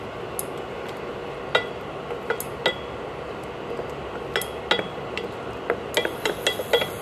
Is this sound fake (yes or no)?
no